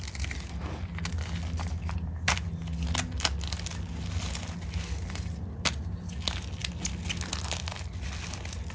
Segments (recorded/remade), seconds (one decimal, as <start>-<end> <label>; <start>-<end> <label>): 0.0-8.7 recorded